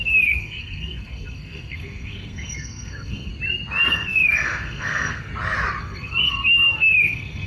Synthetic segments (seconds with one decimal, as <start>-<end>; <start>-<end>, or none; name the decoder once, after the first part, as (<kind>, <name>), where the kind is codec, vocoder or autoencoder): 0.0-3.3 (codec, SNAC); 3.9-5.3; 5.8-7.5